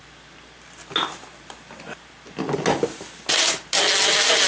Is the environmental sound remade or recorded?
recorded